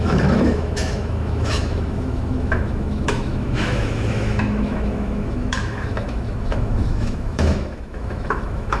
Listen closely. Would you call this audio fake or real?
fake